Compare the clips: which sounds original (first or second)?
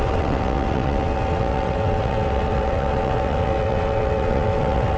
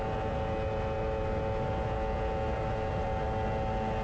second